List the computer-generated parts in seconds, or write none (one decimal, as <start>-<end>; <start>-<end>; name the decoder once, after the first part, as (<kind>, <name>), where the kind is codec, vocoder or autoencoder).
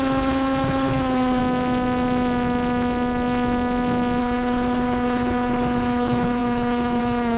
0.0-1.4 (codec, HILCodec); 4.2-7.4